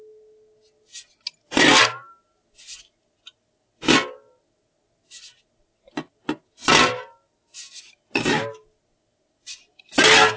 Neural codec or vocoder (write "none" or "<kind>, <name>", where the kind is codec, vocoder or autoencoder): none